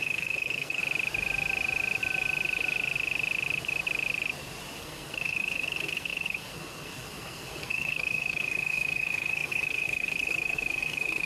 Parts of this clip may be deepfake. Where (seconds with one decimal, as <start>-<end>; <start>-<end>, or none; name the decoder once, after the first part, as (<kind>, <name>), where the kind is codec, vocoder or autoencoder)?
0.0-0.8 (codec, SNAC); 4.8-11.3